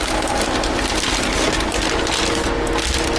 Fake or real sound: real